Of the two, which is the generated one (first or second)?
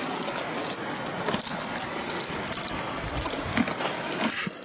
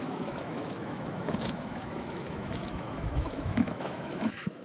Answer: second